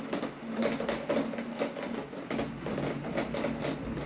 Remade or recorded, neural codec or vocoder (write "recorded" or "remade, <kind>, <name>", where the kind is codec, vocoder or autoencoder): recorded